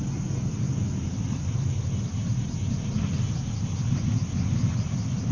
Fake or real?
real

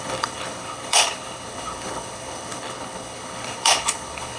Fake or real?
fake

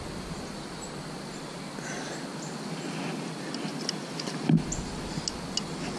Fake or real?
real